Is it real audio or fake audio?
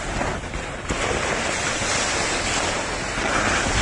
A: real